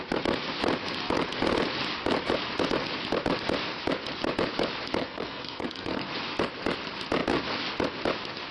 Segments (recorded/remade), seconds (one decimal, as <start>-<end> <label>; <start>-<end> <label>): 0.0-5.0 recorded; 5.0-6.1 remade; 6.1-8.5 recorded